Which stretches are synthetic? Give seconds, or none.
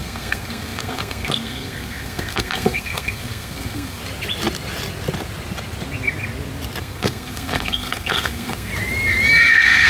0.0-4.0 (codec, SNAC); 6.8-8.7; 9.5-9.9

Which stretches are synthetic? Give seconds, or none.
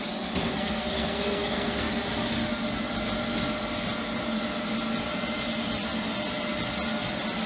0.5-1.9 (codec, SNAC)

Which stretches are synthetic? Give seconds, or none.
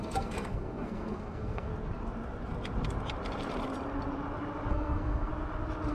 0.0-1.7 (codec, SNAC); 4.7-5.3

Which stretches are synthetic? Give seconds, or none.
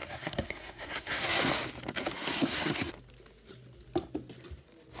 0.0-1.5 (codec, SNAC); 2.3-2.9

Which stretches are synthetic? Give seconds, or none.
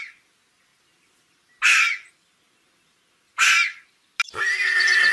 none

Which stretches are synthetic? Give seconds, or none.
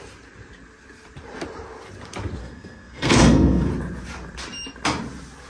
2.4-3.7 (codec, SNAC)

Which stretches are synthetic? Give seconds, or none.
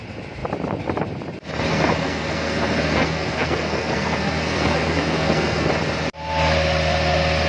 1.7-5.7 (codec, SNAC)